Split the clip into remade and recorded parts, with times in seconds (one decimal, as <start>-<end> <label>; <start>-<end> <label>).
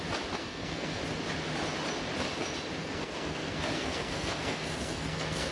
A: 0.0-0.4 recorded; 0.4-1.0 remade; 1.0-2.8 recorded; 2.8-5.5 remade